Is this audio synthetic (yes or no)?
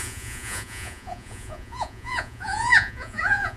yes